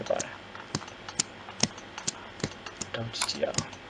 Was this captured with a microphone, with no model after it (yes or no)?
yes